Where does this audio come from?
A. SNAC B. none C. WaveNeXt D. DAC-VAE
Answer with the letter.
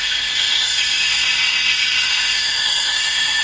D